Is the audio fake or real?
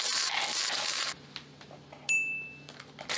real